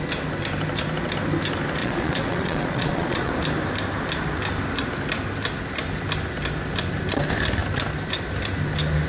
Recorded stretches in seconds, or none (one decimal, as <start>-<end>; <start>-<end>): 0.0-1.8; 3.3-9.1